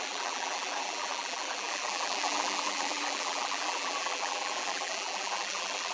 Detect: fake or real fake